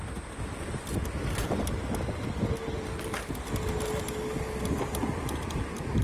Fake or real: real